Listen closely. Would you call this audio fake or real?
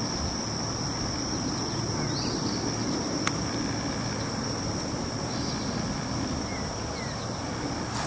real